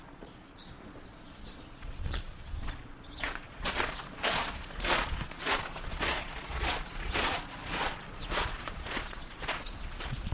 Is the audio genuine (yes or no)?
no